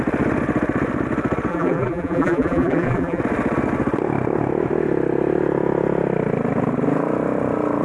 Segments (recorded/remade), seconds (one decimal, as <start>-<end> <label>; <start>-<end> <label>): 0.0-1.5 recorded; 1.5-3.2 remade; 3.2-7.8 recorded